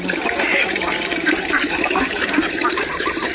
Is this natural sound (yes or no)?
no